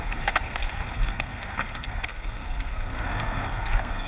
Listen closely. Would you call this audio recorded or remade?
remade